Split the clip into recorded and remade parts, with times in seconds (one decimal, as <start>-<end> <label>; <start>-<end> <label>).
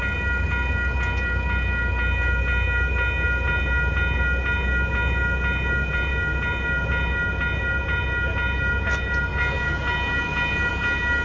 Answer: 0.0-11.2 recorded